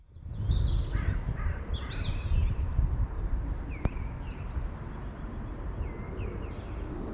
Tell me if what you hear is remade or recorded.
recorded